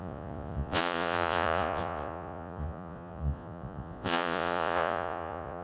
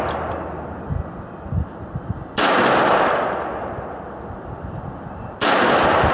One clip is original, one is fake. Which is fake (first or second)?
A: first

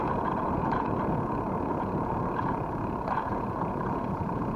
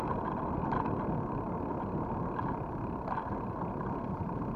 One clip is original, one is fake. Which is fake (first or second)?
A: first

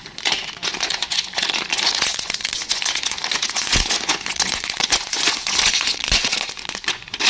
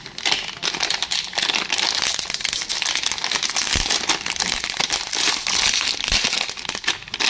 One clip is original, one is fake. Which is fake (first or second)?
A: first